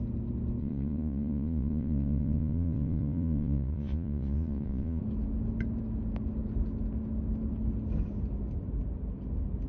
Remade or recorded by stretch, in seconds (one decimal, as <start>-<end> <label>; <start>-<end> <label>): 0.0-0.6 recorded; 0.6-5.0 remade; 5.0-9.7 recorded